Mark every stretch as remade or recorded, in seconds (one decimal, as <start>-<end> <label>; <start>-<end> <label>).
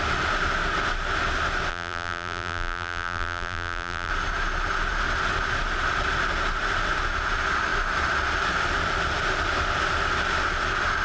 0.0-1.7 recorded; 1.7-4.1 remade; 4.1-11.0 recorded